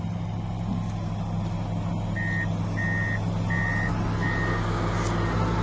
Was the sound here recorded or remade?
recorded